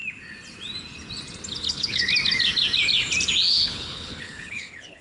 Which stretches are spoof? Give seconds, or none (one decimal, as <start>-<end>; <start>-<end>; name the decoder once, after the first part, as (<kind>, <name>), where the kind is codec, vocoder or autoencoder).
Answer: 1.7-2.1 (codec, HILCodec); 3.5-5.0